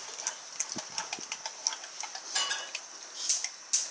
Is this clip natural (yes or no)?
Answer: yes